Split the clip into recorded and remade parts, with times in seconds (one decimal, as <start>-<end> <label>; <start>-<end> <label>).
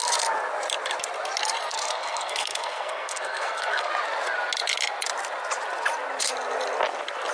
0.0-1.7 recorded; 1.7-3.9 remade; 3.9-7.3 recorded